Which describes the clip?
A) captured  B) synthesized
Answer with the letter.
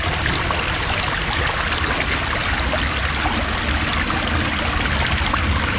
A